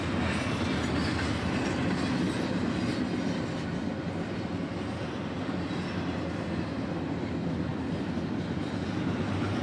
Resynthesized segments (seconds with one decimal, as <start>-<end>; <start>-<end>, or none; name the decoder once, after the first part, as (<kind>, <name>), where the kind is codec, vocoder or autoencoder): none